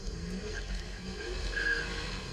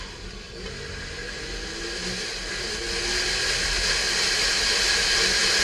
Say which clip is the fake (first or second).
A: first